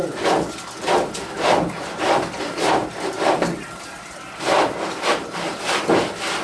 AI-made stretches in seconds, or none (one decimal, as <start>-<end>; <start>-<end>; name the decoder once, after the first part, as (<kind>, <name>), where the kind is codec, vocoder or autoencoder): none